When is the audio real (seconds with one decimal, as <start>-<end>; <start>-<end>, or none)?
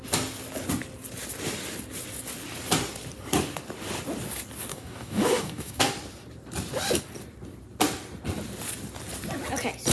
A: 0.0-4.7; 5.9-9.9